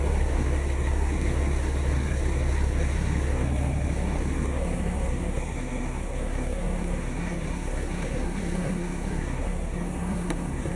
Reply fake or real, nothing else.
fake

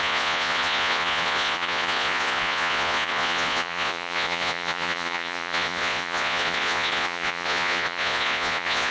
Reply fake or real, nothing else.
fake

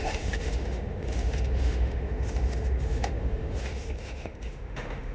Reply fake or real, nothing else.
fake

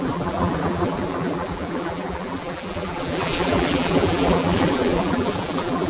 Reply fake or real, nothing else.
fake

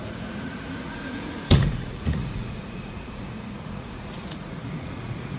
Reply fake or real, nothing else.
fake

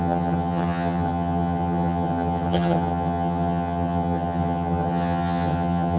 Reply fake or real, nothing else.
fake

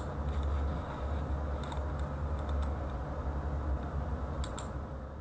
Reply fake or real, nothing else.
real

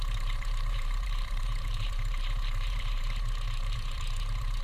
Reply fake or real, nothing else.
fake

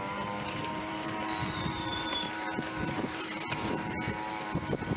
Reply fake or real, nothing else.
fake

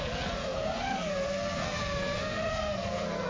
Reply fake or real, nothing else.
fake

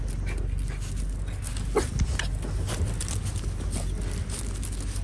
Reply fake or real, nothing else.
real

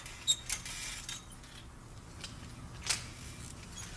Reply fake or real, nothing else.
real